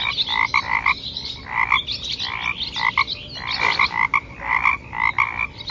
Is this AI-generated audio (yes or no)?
no